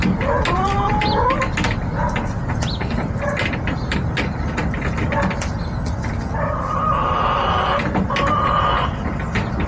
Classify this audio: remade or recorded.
recorded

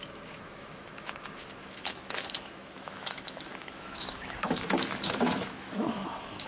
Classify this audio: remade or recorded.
remade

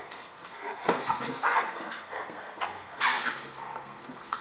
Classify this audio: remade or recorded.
remade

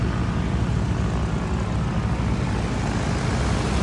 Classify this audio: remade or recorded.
recorded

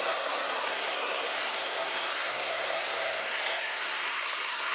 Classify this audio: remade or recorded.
remade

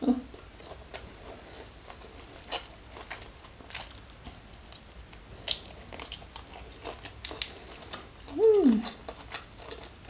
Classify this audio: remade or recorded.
recorded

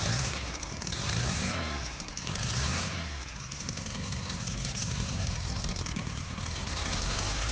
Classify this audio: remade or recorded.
remade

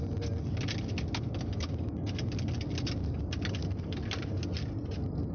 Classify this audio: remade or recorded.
recorded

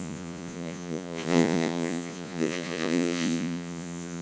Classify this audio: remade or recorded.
remade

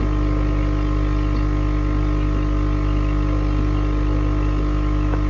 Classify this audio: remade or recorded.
recorded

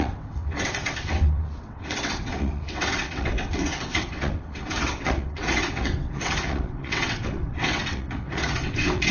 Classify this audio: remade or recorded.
remade